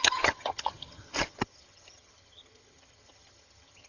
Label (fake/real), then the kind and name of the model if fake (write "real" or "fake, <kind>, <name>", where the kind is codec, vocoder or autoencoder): fake, vocoder, HiFi-GAN